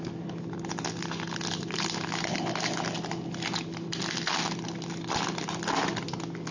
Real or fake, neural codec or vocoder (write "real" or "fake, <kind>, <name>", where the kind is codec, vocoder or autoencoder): real